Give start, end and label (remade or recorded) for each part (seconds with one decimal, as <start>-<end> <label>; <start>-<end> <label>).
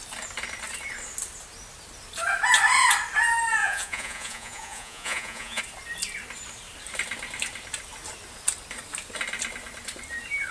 0.0-3.6 recorded; 3.6-5.6 remade; 5.6-10.5 recorded